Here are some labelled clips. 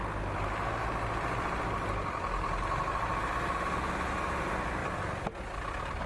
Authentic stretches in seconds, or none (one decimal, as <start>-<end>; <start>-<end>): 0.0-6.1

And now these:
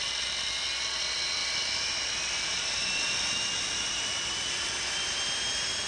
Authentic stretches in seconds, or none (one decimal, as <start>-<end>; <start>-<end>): none

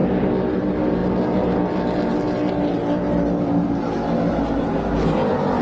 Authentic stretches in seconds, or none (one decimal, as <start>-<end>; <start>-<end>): 0.0-5.6

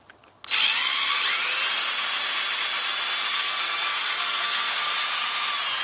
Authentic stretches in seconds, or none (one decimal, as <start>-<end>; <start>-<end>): 0.0-3.3; 4.9-5.8

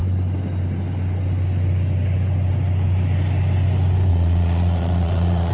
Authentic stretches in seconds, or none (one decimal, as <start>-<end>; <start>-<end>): 0.0-4.1

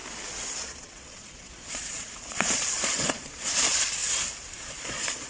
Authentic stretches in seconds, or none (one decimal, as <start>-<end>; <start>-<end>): 0.0-0.6; 4.0-4.6

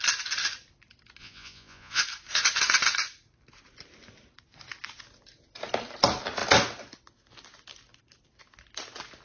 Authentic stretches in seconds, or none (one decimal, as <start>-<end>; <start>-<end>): 0.0-1.2; 2.0-9.2

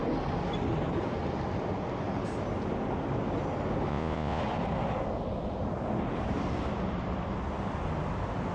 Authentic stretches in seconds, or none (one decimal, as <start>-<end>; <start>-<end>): 0.0-3.9; 4.4-8.5